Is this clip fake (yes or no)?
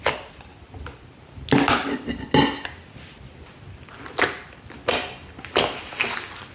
no